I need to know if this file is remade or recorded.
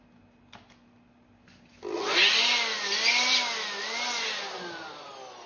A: recorded